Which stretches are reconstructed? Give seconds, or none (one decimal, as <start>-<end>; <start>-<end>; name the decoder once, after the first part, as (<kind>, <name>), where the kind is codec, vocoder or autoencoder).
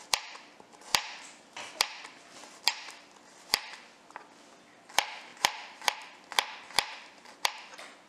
2.4-3.8 (vocoder, BigVGAN v2); 5.3-7.3